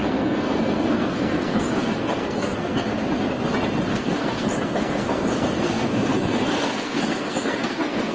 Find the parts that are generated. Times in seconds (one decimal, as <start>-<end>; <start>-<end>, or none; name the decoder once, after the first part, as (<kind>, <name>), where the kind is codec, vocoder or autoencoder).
0.0-2.9 (codec, SNAC); 3.9-8.1